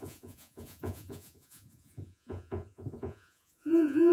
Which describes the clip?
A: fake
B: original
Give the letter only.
A